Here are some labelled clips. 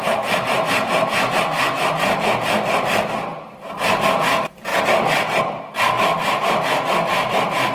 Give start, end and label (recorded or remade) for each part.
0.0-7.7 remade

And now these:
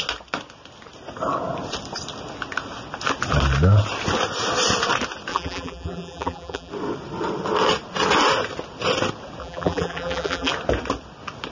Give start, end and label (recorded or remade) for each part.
0.0-5.3 recorded; 5.3-6.7 remade; 6.7-9.4 recorded; 9.4-10.5 remade; 10.5-11.5 recorded

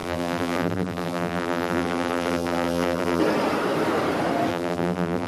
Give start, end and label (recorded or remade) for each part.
0.0-3.2 remade; 3.2-4.5 recorded; 4.5-5.3 remade

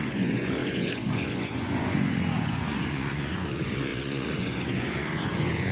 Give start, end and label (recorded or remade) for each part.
0.0-5.7 remade

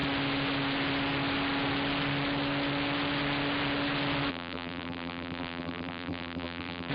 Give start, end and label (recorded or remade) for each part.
0.0-4.3 recorded; 4.3-6.9 remade